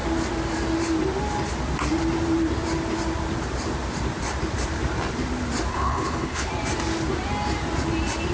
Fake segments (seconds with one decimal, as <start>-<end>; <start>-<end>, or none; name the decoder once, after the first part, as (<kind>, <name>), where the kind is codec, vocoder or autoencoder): 5.7-6.5 (codec, HILCodec)